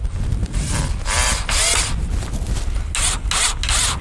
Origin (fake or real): real